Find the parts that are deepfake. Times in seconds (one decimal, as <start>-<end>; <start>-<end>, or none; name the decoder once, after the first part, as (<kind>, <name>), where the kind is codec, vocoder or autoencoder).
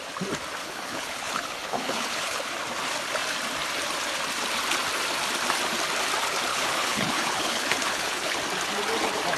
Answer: 0.6-2.5 (codec, HILCodec); 6.5-8.4